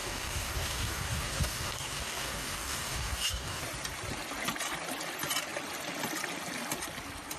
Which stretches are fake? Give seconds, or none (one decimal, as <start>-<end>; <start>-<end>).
0.0-3.6